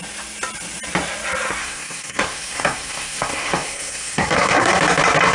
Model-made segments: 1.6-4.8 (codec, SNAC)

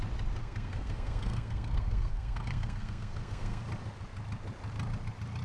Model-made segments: 0.4-3.6 (codec, SNAC)

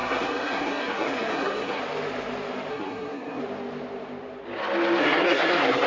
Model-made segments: 0.0-1.8 (codec, SNAC); 2.7-3.4; 5.0-5.9

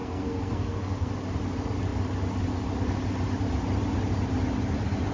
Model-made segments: 0.0-1.1 (codec, SNAC)

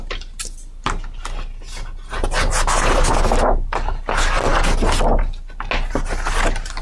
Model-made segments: none